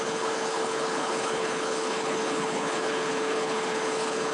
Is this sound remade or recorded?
remade